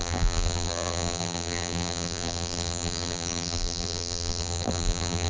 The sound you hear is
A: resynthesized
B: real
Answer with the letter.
A